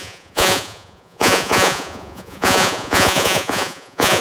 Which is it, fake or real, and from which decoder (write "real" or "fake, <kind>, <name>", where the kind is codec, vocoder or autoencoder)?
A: fake, vocoder, Vocos